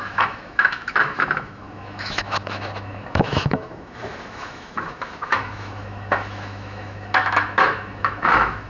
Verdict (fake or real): fake